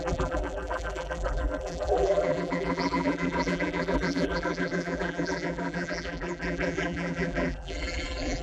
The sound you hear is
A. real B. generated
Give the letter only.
B